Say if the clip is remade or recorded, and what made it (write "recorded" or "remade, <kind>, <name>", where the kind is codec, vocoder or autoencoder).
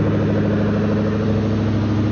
recorded